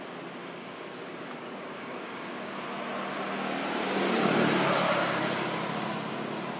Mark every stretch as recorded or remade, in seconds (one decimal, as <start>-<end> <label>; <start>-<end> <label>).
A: 0.0-0.4 recorded; 0.4-2.6 remade; 2.6-6.6 recorded